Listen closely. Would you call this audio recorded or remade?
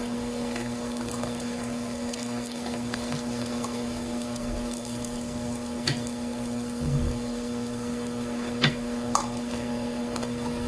remade